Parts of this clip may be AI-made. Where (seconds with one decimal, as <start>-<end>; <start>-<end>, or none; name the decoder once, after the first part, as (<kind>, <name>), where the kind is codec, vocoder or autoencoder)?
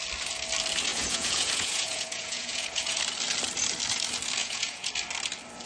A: 0.9-3.0 (vocoder, Vocos); 4.4-4.9